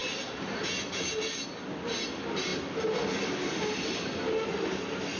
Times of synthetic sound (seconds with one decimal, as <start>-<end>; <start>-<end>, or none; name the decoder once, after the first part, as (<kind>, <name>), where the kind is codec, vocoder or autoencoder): none